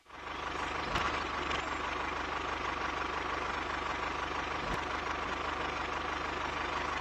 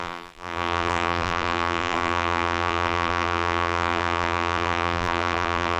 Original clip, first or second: first